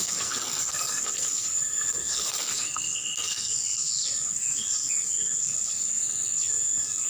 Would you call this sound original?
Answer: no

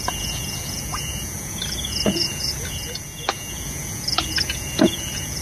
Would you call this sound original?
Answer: no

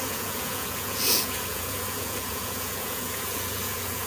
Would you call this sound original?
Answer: no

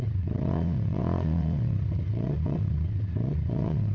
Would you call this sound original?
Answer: no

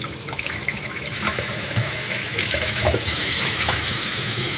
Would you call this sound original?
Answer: no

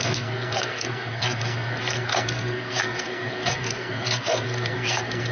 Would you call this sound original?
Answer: no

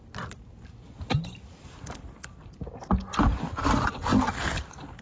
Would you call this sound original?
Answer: yes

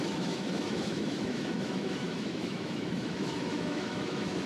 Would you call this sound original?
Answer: no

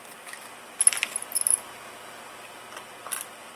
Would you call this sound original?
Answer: yes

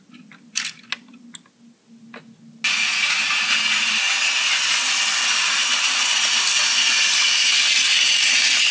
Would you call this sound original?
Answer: yes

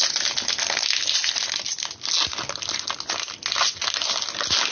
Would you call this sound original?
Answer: yes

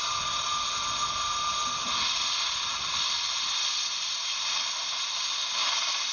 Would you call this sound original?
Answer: yes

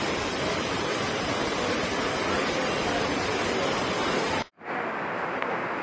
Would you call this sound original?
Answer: yes